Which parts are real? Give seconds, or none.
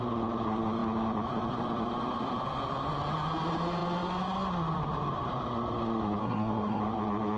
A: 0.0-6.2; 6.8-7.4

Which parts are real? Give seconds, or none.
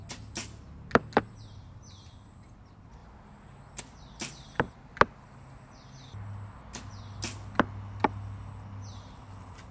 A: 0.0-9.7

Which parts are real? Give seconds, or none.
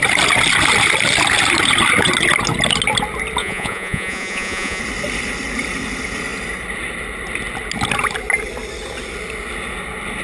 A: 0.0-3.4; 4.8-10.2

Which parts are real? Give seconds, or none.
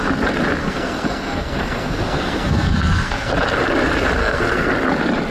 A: 0.0-0.6; 3.3-4.2; 4.7-5.3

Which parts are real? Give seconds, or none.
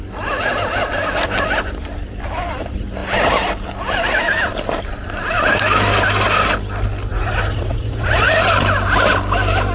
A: 0.0-7.1; 8.3-9.7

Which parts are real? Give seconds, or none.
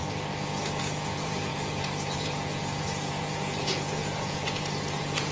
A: 0.0-0.8